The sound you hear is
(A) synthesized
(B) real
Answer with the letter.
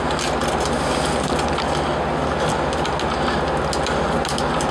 B